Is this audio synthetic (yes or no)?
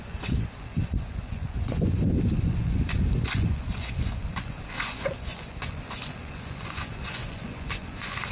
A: yes